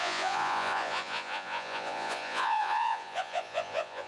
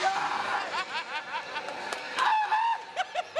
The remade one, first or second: first